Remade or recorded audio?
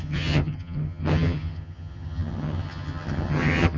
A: remade